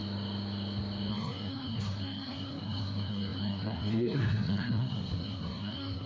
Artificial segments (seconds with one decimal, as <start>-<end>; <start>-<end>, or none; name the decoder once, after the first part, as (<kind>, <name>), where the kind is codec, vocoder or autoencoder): 1.1-6.1 (codec, SNAC)

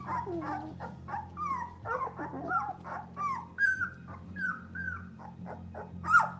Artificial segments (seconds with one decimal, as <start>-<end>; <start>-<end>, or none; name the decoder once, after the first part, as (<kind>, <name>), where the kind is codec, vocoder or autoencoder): 2.3-6.4 (vocoder, BigVGAN v2)